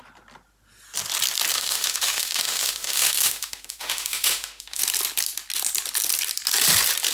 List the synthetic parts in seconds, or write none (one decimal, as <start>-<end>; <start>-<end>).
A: 1.5-4.8